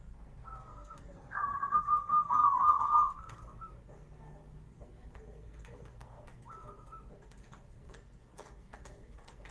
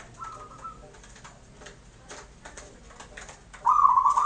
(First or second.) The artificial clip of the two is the first